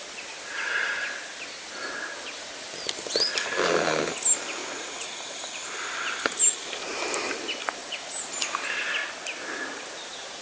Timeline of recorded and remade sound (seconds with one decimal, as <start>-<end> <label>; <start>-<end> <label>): 0.0-4.6 recorded; 4.6-5.6 remade; 5.6-7.8 recorded; 7.8-8.3 remade; 8.3-10.4 recorded